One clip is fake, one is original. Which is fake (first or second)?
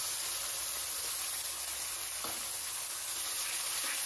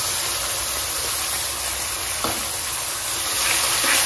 second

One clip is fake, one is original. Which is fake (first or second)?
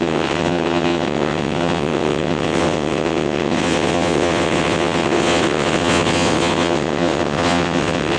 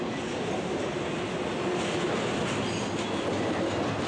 first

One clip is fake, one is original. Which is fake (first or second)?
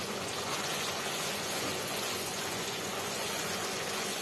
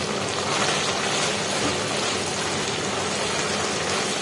first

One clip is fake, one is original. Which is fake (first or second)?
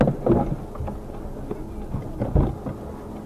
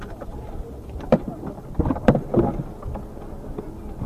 second